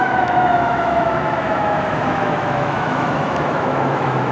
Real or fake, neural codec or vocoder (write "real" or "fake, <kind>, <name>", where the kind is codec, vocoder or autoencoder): fake, autoencoder, DAC-VAE